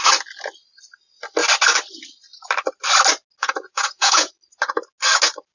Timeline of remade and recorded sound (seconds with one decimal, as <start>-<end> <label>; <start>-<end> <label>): 0.0-3.4 recorded; 3.4-4.3 remade; 4.3-5.5 recorded